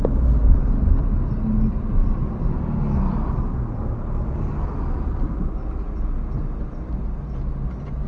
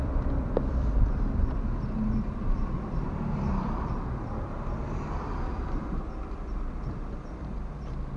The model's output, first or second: second